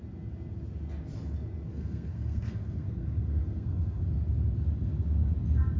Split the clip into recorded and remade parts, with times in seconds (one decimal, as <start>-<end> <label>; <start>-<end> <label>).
0.0-1.7 recorded; 1.7-4.0 remade; 4.0-5.8 recorded